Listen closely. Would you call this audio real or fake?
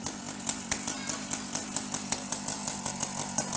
real